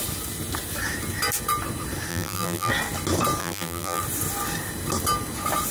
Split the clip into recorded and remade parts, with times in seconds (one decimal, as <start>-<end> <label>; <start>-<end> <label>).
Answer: 0.0-2.1 recorded; 2.1-2.7 remade; 2.7-3.4 recorded; 3.4-4.0 remade; 4.0-5.7 recorded